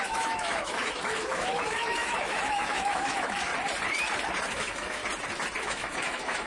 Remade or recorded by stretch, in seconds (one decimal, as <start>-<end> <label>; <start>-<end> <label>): 0.0-3.5 remade; 3.5-4.5 recorded; 4.5-5.0 remade; 5.0-5.6 recorded; 5.6-6.5 remade